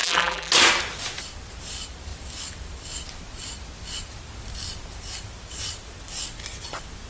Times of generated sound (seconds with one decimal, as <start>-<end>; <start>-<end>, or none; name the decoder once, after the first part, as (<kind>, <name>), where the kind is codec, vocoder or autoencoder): 0.0-0.5 (vocoder, BigVGAN v2)